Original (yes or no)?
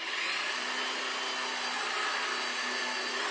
yes